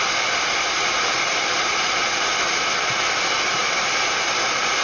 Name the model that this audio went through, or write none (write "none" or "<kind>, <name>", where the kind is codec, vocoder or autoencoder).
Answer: none